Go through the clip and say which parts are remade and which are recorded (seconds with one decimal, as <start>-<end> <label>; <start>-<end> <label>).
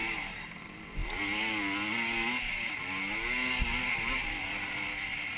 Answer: 0.0-5.4 recorded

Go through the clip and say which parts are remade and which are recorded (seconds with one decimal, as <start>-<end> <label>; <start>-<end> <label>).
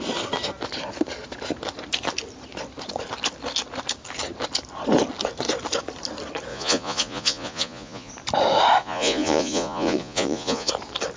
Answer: 0.0-6.5 recorded; 6.5-8.1 remade; 8.1-8.8 recorded; 8.8-10.7 remade; 10.7-11.2 recorded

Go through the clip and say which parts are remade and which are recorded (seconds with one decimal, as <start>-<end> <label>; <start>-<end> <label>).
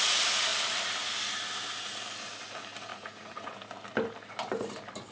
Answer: 0.0-2.9 recorded; 2.9-3.5 remade; 3.5-5.1 recorded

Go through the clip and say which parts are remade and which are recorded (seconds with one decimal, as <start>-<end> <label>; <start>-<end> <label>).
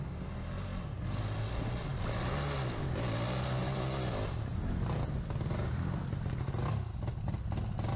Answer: 0.0-8.0 recorded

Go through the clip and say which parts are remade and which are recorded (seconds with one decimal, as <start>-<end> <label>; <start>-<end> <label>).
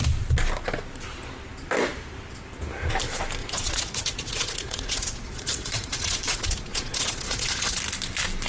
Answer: 0.0-3.4 recorded; 3.4-7.8 remade; 7.8-8.5 recorded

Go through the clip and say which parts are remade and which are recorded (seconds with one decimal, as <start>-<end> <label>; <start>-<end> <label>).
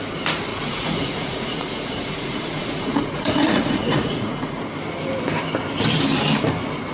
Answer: 0.0-0.5 recorded; 0.5-4.6 remade; 4.6-6.9 recorded